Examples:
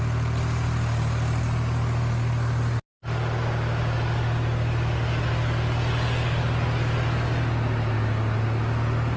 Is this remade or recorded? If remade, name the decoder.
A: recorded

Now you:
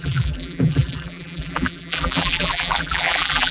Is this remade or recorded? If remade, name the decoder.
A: remade, vocoder, BigVGAN v2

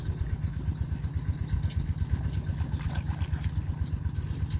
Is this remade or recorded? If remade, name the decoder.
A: recorded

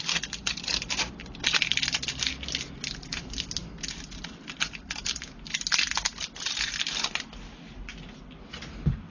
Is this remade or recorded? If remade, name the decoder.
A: recorded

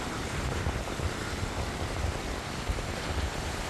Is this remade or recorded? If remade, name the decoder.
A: recorded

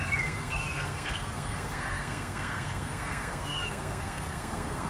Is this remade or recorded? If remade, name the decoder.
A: remade, codec, SNAC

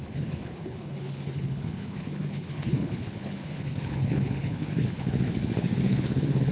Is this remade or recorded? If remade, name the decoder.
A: remade, codec, HILCodec